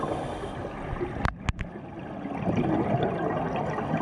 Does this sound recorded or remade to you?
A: recorded